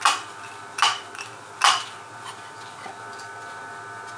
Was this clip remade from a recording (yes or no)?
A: no